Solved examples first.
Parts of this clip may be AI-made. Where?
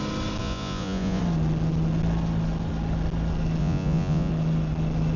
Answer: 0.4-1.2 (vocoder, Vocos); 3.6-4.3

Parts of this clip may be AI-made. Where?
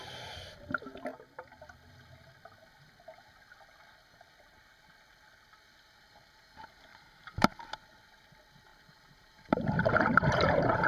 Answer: 1.1-1.6 (vocoder, BigVGAN v2); 6.9-7.5; 8.7-10.9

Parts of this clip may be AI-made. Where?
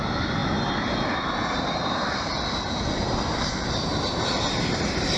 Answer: 0.0-0.4 (vocoder, BigVGAN v2); 1.8-2.3; 3.3-5.2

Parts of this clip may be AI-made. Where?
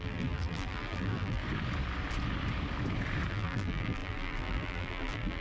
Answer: 0.0-1.4 (vocoder, BigVGAN v2); 3.3-5.4